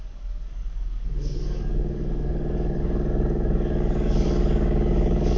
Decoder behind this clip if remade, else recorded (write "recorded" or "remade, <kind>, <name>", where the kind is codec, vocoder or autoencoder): remade, codec, DAC